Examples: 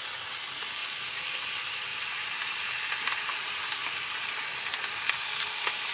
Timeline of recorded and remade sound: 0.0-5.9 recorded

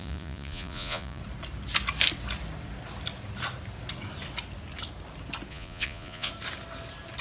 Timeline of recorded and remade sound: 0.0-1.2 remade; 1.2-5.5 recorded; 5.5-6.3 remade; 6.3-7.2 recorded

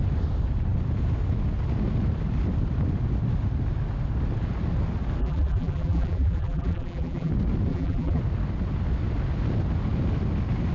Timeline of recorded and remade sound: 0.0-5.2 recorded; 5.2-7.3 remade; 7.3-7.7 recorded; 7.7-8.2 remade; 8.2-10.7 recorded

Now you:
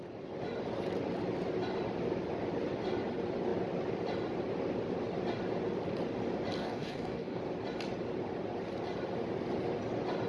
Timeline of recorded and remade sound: 0.0-6.6 recorded; 6.6-7.4 remade; 7.4-10.3 recorded